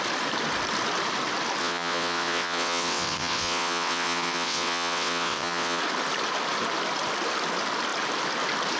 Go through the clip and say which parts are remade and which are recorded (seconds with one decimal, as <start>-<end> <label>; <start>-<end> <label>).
0.0-1.6 recorded; 1.6-5.8 remade; 5.8-8.8 recorded